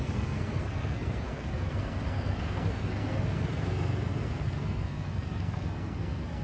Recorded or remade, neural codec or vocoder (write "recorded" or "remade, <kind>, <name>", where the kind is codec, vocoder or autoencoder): remade, codec, SNAC